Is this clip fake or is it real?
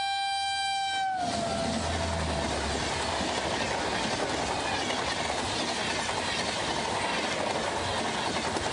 real